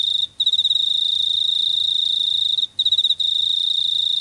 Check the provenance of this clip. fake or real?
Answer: real